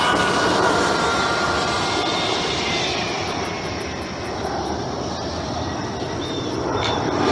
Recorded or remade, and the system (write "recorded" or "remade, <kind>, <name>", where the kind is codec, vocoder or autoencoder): remade, vocoder, BigVGAN v2